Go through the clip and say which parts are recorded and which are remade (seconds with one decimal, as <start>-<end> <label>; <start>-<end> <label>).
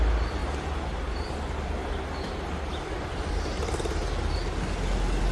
0.0-5.3 recorded